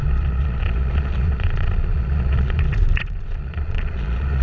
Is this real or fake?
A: fake